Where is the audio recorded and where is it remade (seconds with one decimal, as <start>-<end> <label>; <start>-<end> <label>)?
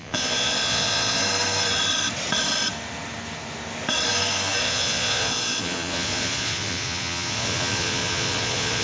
0.0-1.2 remade; 1.2-4.6 recorded; 4.6-8.8 remade